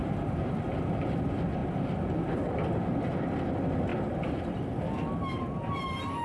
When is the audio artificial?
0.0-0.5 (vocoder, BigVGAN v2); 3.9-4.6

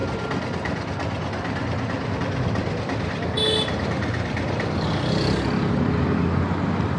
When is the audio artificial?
none

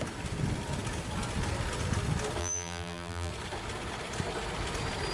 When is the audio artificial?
2.4-3.3 (vocoder, BigVGAN v2)

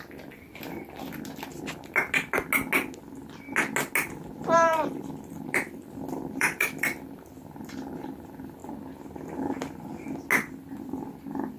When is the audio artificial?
0.0-0.5 (vocoder, BigVGAN v2); 4.4-8.6; 10.8-11.6